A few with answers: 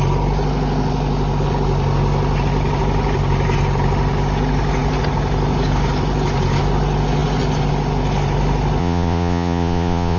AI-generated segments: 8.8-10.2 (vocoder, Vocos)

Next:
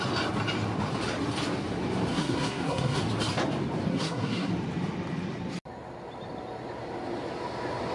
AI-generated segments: 2.1-3.0 (codec, SNAC); 3.9-4.5

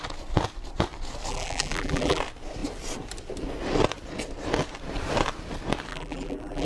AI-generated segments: 1.3-2.2 (vocoder, BigVGAN v2); 5.9-6.7

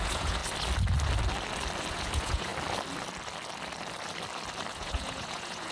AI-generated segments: 0.0-0.4 (vocoder, Vocos); 1.9-2.5; 4.7-5.7

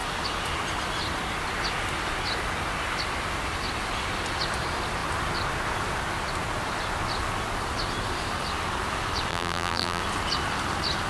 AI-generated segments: 9.3-10.0 (vocoder, BigVGAN v2)